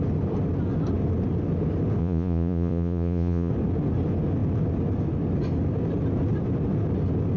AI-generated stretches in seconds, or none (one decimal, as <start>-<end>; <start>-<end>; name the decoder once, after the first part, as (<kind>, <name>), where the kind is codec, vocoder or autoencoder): 2.0-3.5 (vocoder, Vocos)